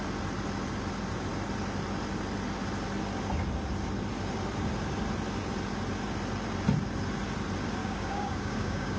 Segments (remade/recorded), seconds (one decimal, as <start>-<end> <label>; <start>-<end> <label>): 0.0-7.8 recorded; 7.8-9.0 remade